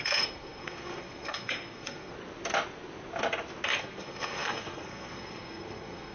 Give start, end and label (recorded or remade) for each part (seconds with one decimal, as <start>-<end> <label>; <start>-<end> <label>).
0.0-2.1 remade; 2.1-3.8 recorded; 3.8-6.1 remade